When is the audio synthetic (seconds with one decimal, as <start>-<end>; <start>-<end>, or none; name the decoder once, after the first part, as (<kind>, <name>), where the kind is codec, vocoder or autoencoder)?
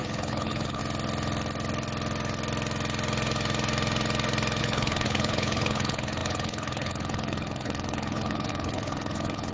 0.0-0.8 (codec, HILCodec); 4.6-9.5